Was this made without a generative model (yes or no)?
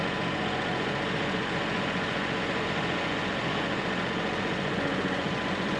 no